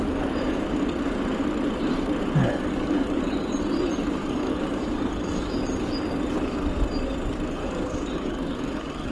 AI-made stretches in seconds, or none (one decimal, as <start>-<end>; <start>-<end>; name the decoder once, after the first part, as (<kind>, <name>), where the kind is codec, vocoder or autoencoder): 2.4-3.5 (codec, DAC); 4.2-5.6; 7.6-9.1